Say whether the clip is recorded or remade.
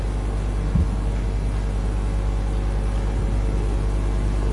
recorded